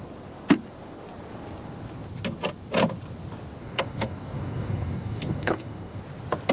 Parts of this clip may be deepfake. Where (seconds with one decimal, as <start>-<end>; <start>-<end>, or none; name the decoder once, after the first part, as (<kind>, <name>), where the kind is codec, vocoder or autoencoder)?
3.6-6.0 (codec, DAC)

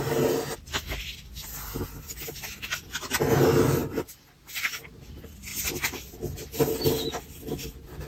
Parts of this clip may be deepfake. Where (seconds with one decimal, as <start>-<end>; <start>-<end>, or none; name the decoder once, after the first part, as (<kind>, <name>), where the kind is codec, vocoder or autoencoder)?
none

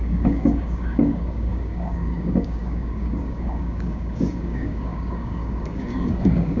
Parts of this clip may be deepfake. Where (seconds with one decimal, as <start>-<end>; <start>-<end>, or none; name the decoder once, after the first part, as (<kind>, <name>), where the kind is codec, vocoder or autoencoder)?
0.0-6.6 (codec, DAC)

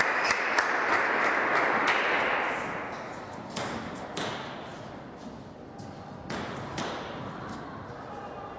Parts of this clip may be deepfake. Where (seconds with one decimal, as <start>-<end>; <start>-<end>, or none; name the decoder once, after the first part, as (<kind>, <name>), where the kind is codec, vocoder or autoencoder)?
none

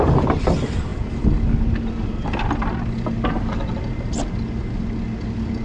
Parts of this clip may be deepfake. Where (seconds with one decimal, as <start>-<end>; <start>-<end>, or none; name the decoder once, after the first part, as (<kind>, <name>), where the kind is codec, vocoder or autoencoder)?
none

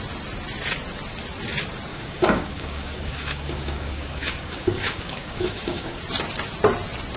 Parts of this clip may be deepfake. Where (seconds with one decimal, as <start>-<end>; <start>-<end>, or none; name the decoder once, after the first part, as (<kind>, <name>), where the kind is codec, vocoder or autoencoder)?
1.9-6.0 (codec, DAC)

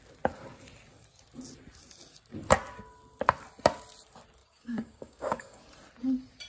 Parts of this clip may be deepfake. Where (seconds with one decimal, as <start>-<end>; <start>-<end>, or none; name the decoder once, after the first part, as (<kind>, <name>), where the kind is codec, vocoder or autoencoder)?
4.4-5.6 (codec, DAC)